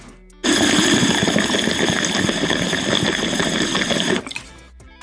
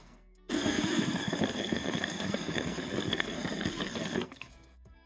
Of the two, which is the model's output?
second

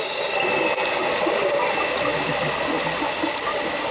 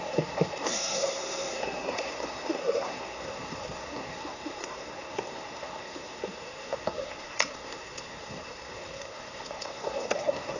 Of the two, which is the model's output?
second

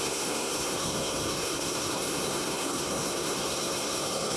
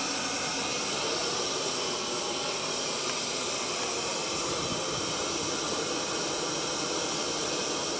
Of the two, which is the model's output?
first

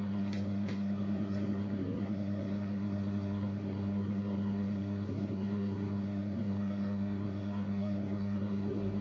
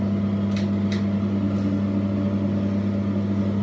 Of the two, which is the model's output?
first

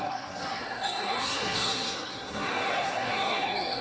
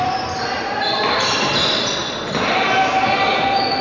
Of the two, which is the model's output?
first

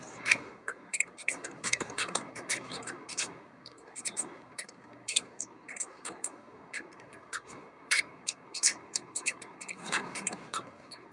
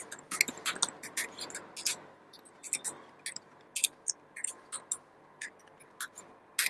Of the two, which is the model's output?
first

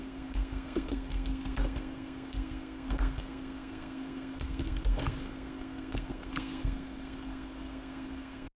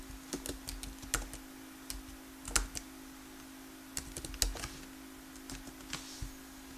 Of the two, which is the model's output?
first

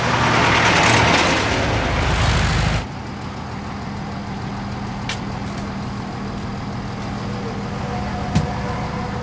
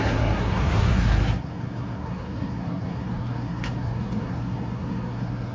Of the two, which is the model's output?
second